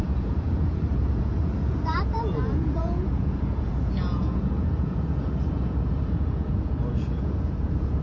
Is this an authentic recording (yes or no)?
no